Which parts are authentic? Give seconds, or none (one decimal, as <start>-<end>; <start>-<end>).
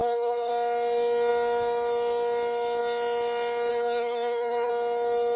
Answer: 0.5-3.7; 4.7-5.4